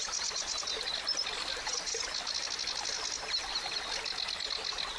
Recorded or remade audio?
recorded